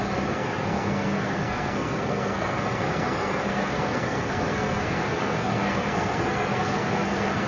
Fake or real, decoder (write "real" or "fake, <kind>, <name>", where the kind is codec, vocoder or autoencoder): fake, codec, SNAC